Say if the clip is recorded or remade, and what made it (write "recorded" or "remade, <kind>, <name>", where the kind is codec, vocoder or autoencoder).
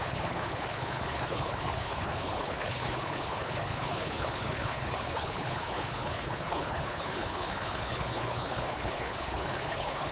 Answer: remade, codec, HILCodec